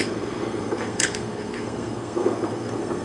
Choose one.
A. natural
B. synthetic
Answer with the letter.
B